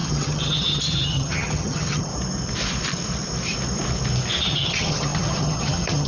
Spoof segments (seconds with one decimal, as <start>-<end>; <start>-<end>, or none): 0.0-2.1; 4.4-6.1